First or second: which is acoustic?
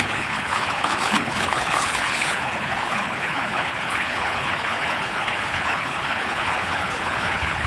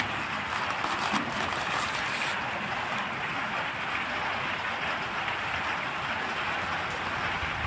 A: second